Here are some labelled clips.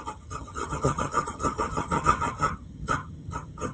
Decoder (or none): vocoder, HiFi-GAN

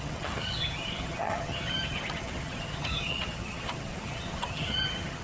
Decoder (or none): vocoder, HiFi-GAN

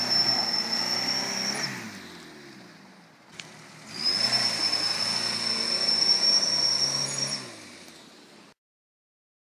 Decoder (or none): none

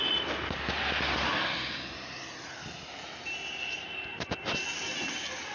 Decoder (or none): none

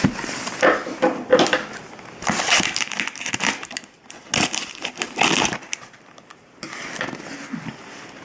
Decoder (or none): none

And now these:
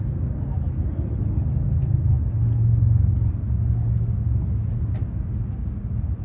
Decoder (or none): none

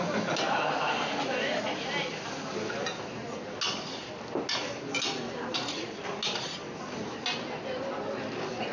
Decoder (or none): none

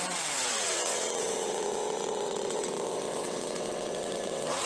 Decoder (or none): vocoder, WaveNeXt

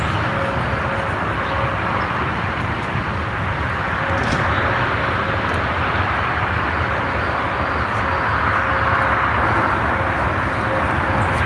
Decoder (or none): none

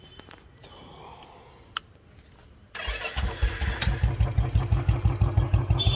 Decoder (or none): none